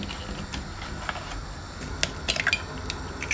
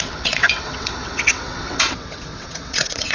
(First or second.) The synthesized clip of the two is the second